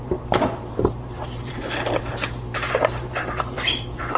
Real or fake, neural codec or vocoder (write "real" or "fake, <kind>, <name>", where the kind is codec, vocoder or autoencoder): fake, vocoder, BigVGAN v2